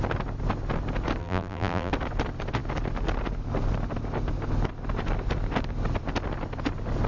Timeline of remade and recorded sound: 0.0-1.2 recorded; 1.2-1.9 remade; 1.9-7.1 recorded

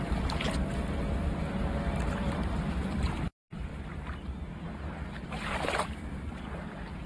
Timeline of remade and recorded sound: 0.0-3.7 remade; 3.7-7.1 recorded